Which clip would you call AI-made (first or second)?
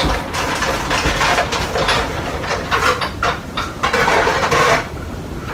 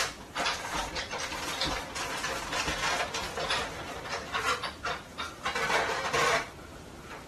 first